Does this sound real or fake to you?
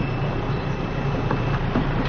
real